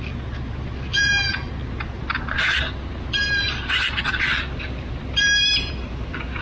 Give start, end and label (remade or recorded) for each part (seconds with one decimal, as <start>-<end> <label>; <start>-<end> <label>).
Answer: 0.0-0.9 recorded; 0.9-1.5 remade; 1.5-6.4 recorded